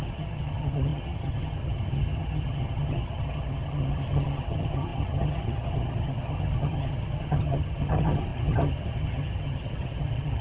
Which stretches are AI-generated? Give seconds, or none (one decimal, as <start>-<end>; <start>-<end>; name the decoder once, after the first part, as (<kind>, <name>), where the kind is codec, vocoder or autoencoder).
0.0-10.4 (vocoder, HiFi-GAN)